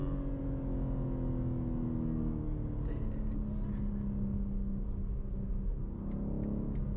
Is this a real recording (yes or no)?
yes